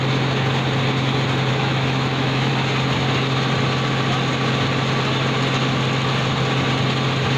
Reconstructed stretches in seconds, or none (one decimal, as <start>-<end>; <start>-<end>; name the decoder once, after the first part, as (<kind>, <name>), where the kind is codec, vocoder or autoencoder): 1.5-2.5 (autoencoder, DAC-VAE)